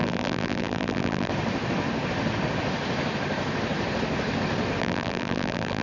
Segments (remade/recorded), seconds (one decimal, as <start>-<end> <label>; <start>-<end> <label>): 0.0-1.3 remade; 1.3-4.8 recorded; 4.8-5.8 remade